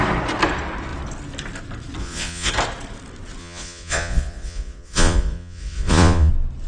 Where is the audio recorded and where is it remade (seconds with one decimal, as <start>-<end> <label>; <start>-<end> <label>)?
0.0-2.0 recorded; 2.0-2.5 remade; 2.5-3.4 recorded; 3.4-6.3 remade; 6.3-6.7 recorded